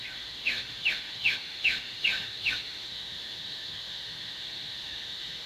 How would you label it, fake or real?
fake